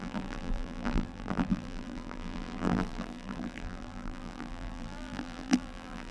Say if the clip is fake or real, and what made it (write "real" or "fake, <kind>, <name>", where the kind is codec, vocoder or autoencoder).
fake, vocoder, BigVGAN v2